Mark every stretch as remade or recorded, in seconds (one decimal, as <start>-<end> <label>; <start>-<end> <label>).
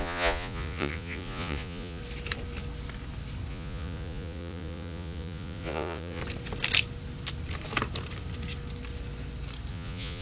0.0-2.0 remade; 2.0-3.5 recorded; 3.5-6.2 remade; 6.2-9.7 recorded; 9.7-10.2 remade